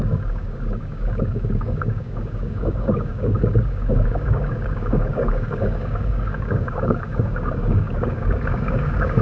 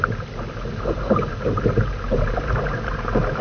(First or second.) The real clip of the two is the second